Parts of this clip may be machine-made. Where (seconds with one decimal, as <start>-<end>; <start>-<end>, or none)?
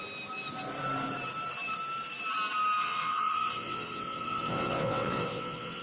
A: 2.8-5.8